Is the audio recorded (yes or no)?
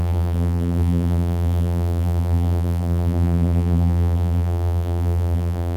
no